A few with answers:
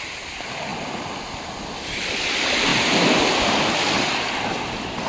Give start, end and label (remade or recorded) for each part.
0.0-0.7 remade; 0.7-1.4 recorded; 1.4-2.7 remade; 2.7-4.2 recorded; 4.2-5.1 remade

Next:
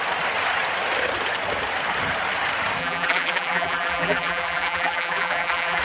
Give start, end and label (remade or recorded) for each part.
0.0-2.8 recorded; 2.8-5.8 remade